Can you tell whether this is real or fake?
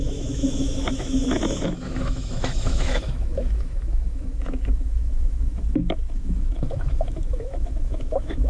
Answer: fake